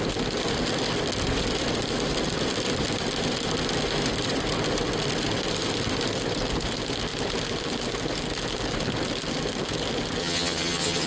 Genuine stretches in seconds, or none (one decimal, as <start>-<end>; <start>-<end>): 0.0-10.2